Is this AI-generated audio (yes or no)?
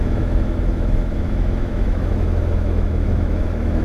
yes